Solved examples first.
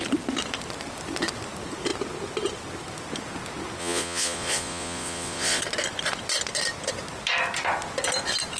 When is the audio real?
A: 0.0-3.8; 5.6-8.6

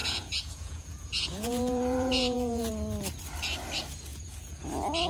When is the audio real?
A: 2.7-4.1; 4.6-5.1

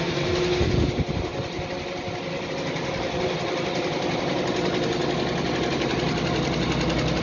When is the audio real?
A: 0.0-7.2

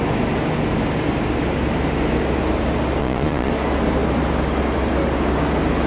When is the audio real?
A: 0.0-3.0; 3.5-5.9

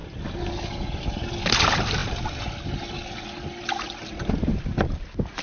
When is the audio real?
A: 0.0-5.4